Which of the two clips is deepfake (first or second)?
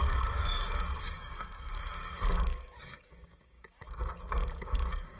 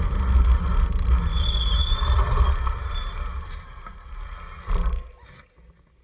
first